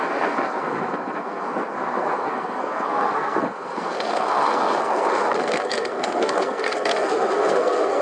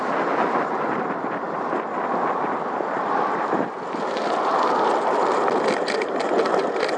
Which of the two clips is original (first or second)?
second